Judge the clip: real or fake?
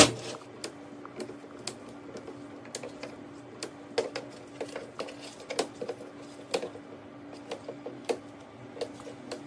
real